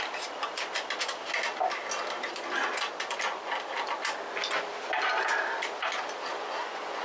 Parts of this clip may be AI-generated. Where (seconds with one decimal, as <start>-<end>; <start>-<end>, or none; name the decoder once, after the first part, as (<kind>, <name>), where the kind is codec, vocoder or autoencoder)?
6.3-7.0 (vocoder, Vocos)